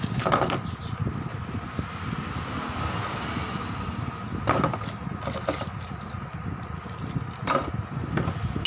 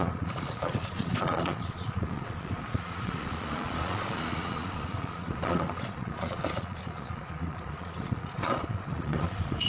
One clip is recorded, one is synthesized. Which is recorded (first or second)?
first